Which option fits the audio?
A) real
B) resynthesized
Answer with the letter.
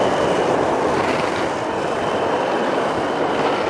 A